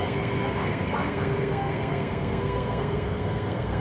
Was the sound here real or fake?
fake